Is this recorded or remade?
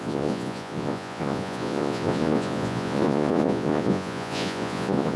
remade